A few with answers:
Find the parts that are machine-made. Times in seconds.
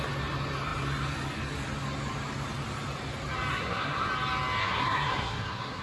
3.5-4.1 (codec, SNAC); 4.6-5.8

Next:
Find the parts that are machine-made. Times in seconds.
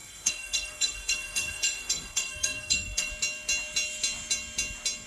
0.0-3.1 (codec, SNAC)